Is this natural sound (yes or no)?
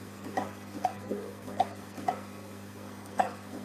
no